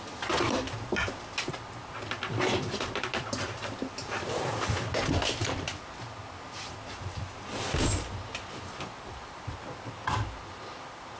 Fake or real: fake